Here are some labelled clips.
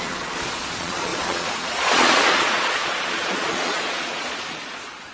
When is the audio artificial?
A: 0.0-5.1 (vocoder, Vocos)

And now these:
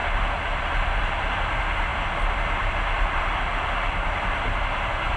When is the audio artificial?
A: none

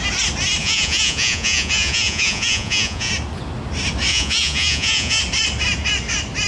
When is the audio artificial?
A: 0.6-3.1 (vocoder, Vocos); 4.1-5.2

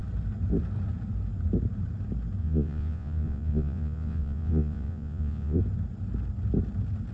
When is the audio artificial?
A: 2.4-5.6 (vocoder, Vocos)

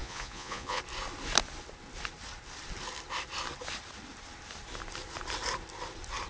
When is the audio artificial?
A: 0.0-0.8 (vocoder, Vocos)

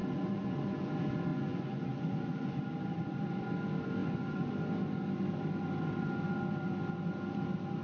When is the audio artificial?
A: 0.0-0.9 (vocoder, Vocos); 1.3-2.6; 4.0-4.5

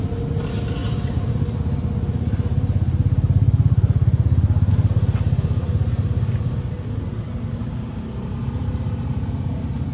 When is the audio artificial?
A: none

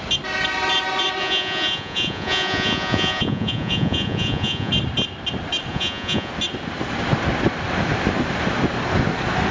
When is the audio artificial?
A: 1.2-4.7 (vocoder, Vocos); 5.7-6.3